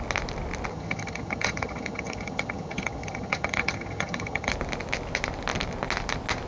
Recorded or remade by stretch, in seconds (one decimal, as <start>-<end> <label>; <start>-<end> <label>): 0.0-0.7 recorded; 0.7-4.5 remade; 4.5-6.5 recorded

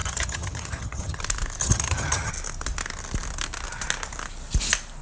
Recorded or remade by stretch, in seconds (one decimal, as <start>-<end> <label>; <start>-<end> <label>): 0.0-1.2 remade; 1.2-1.6 recorded; 1.6-2.3 remade; 2.3-5.0 recorded

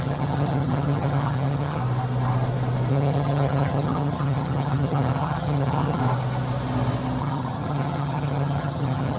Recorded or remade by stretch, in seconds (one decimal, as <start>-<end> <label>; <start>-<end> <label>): 0.0-1.8 remade; 1.8-2.9 recorded; 2.9-6.0 remade; 6.0-7.2 recorded; 7.2-9.2 remade

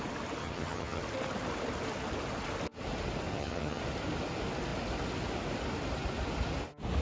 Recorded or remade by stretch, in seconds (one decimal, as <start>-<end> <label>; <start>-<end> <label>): 0.0-0.4 recorded; 0.4-1.0 remade; 1.0-3.3 recorded; 3.3-3.8 remade; 3.8-7.0 recorded

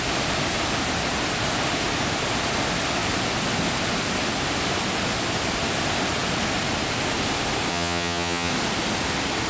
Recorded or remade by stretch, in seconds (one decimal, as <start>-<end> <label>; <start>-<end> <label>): 0.0-7.7 recorded; 7.7-8.5 remade; 8.5-9.5 recorded

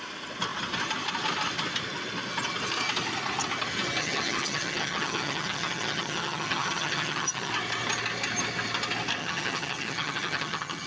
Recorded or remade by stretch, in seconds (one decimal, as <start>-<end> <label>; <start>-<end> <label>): 0.0-4.0 recorded; 4.0-7.5 remade; 7.5-9.2 recorded; 9.2-10.9 remade

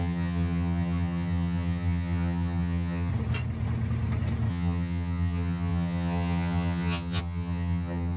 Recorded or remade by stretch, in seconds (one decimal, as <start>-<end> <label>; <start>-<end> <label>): 0.0-3.1 remade; 3.1-4.5 recorded; 4.5-8.2 remade

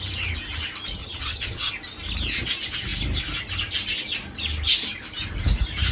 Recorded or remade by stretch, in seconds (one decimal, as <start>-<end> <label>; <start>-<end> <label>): 0.0-1.0 recorded; 1.0-1.7 remade; 1.7-5.9 recorded